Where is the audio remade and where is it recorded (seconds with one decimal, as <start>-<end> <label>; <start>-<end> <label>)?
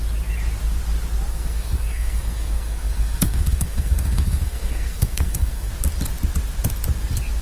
0.0-1.3 recorded; 1.3-5.7 remade; 5.7-7.4 recorded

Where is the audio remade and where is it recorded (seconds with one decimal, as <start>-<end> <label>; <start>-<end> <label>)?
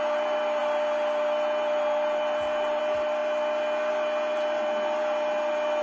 0.0-5.8 recorded